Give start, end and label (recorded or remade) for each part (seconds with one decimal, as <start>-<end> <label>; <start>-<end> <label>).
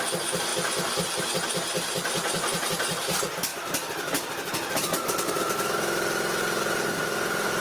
0.0-7.6 recorded